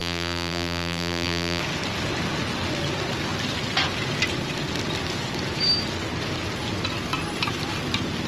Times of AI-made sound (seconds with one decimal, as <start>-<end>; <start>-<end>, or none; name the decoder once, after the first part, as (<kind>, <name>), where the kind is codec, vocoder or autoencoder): 0.0-1.6 (vocoder, BigVGAN v2)